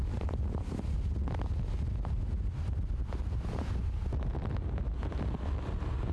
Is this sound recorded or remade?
recorded